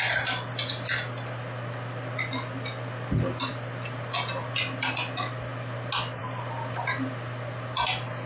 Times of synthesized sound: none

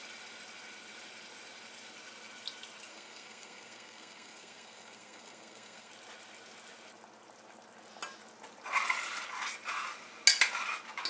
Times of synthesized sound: 2.9-5.9